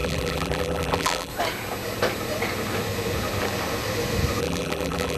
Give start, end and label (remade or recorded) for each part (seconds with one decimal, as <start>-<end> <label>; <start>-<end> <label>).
0.0-1.3 remade; 1.3-4.4 recorded; 4.4-5.2 remade